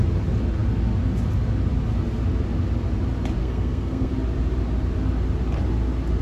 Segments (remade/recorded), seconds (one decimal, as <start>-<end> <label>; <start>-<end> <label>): 0.0-3.4 recorded; 3.4-4.1 remade; 4.1-6.2 recorded